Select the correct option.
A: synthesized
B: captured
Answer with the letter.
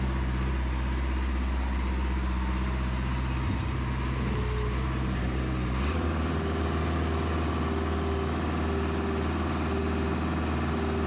B